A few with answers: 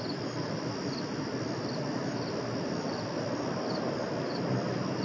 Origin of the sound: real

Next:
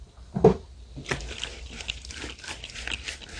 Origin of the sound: real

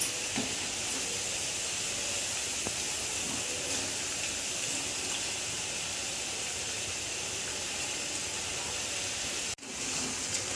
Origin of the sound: real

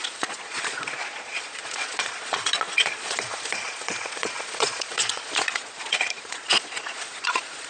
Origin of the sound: fake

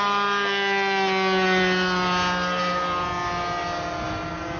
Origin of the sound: real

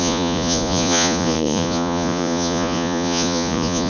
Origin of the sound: fake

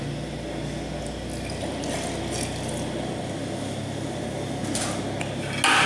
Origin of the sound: real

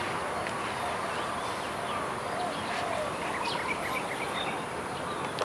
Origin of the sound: real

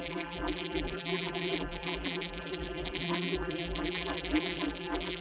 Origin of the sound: fake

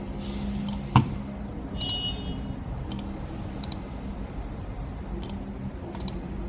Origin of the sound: real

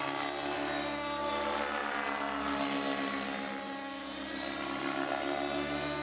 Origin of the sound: real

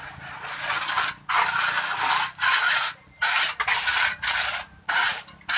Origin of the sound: real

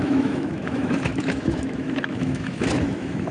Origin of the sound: fake